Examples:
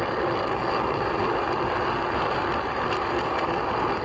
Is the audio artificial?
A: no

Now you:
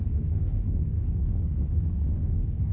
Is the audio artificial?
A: yes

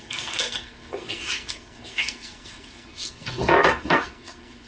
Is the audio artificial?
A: yes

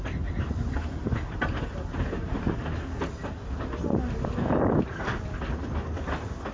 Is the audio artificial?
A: no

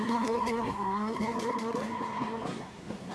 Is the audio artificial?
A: yes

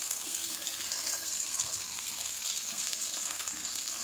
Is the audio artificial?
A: yes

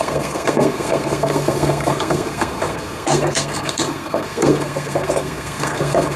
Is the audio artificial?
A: yes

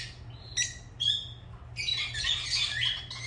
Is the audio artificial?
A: no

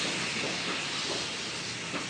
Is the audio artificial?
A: no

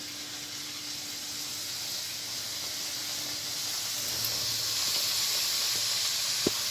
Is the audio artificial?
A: no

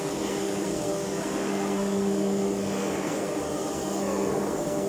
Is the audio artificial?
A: yes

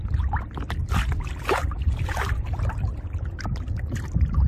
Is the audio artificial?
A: no